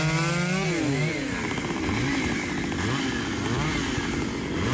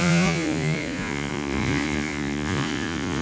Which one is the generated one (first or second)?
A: second